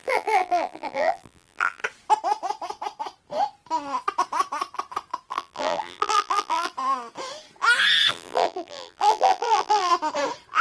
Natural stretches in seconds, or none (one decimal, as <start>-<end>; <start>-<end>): 1.8-5.3; 6.7-8.1; 9.9-10.6